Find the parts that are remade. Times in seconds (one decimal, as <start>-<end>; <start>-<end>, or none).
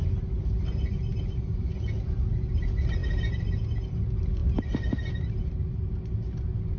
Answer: none